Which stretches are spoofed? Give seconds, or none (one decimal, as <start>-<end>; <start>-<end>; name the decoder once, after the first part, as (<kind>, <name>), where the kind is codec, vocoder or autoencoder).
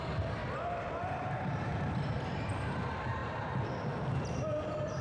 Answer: 0.0-0.4 (vocoder, BigVGAN v2); 0.9-5.0